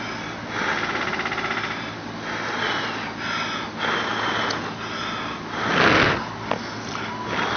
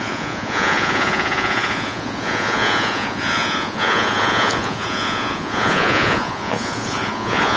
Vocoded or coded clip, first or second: second